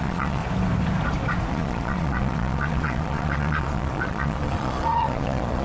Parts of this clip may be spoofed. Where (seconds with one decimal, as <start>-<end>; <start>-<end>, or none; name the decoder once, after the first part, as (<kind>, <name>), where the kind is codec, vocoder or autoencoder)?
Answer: 0.0-0.4 (vocoder, Vocos); 1.5-5.6